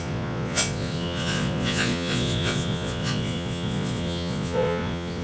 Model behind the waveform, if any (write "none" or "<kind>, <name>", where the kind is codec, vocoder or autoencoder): vocoder, Vocos